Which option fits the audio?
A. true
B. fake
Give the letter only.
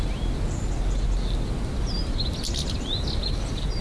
A